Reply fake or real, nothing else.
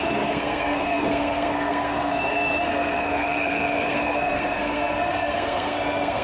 fake